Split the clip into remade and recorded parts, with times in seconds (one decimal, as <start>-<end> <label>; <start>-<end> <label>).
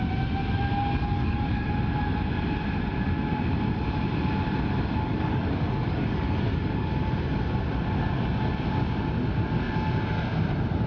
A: 0.0-1.1 recorded; 1.1-1.7 remade; 1.7-5.1 recorded; 5.1-6.9 remade; 6.9-10.9 recorded